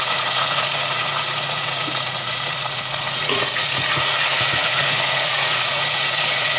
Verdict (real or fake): fake